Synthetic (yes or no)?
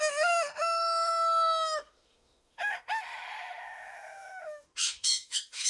yes